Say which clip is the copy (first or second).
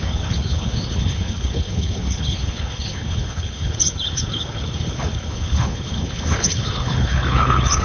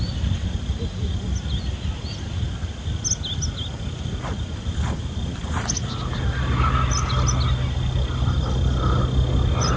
first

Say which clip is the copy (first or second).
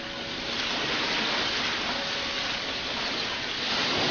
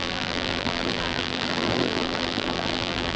second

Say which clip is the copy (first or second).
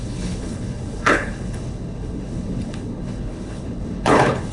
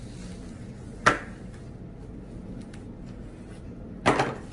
first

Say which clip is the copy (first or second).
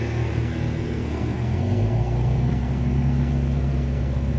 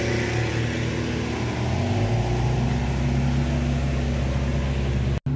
first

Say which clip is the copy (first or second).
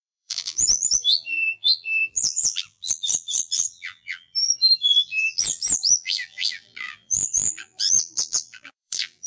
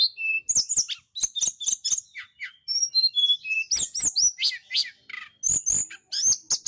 first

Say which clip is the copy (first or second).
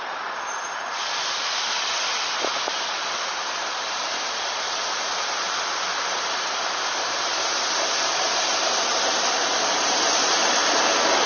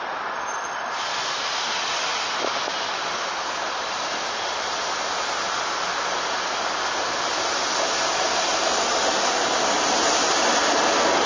first